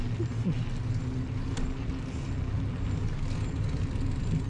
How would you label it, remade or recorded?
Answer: recorded